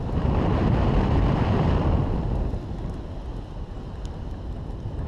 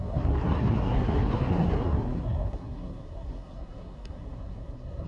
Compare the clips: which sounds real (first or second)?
first